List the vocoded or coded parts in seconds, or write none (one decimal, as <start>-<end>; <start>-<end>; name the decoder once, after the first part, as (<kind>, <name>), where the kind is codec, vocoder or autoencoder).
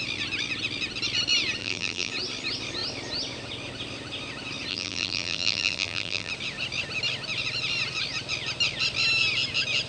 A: 1.6-2.1 (vocoder, BigVGAN v2); 4.7-6.3